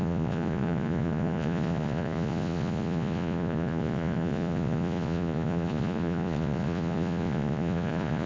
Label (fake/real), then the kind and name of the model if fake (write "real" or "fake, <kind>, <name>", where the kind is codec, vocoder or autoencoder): fake, vocoder, Vocos